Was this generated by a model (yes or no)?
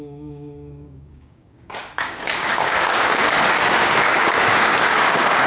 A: yes